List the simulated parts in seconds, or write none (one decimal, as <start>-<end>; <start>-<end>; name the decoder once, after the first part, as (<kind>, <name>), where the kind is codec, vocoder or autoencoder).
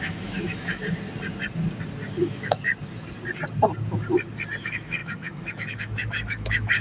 0.0-0.8 (autoencoder, DAC-VAE); 2.2-2.7; 4.6-6.8